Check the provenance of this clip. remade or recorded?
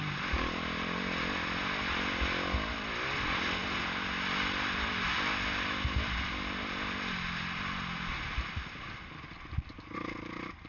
recorded